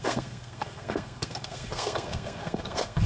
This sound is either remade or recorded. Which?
remade